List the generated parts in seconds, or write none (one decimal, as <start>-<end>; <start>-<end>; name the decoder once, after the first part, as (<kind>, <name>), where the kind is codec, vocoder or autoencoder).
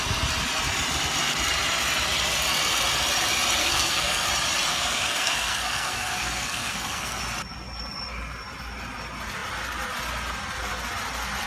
3.6-4.3 (codec, SNAC); 4.7-7.2